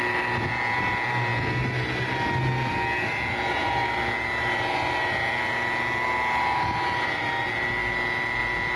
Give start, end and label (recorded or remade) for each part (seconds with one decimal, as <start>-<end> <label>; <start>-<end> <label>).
0.0-8.8 recorded